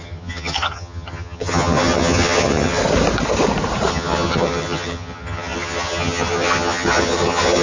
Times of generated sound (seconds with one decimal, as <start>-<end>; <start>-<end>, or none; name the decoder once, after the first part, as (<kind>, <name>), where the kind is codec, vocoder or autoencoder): 0.0-2.8 (vocoder, HiFi-GAN); 3.9-7.6